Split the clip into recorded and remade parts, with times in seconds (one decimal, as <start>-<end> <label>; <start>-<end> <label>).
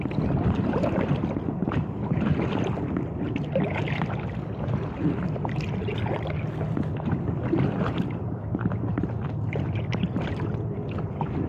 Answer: 0.0-1.6 recorded; 1.6-2.3 remade; 2.3-7.4 recorded; 7.4-10.8 remade; 10.8-11.5 recorded